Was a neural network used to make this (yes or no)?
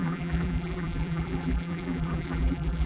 yes